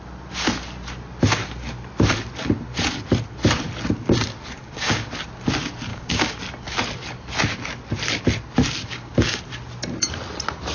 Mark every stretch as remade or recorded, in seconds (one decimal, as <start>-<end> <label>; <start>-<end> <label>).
0.0-4.6 recorded; 4.6-5.1 remade; 5.1-5.9 recorded; 5.9-6.4 remade; 6.4-8.8 recorded; 8.8-9.4 remade; 9.4-10.7 recorded